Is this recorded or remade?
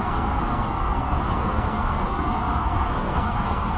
remade